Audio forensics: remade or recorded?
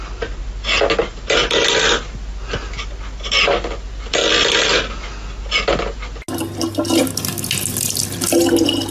recorded